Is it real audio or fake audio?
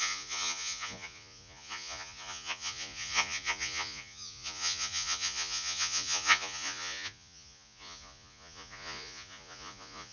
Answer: fake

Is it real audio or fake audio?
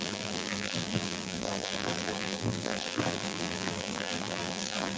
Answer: fake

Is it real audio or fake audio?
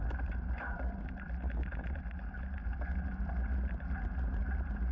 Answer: real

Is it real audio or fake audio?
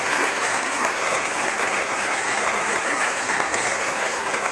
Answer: fake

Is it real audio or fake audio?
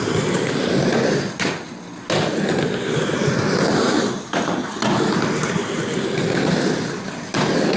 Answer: real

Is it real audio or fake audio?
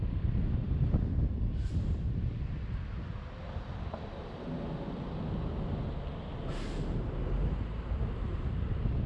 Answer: real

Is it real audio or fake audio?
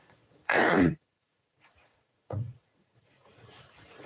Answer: fake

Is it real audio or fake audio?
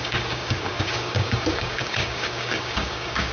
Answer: fake